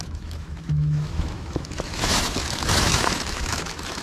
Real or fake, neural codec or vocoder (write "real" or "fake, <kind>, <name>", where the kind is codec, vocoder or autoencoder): fake, autoencoder, DAC-VAE